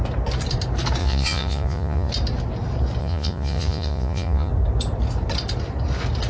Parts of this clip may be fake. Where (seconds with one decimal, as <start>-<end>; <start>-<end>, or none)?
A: 1.0-2.1; 3.0-4.5